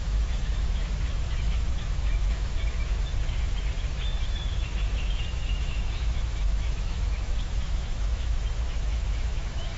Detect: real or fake fake